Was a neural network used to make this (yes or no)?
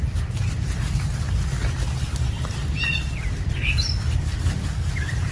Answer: yes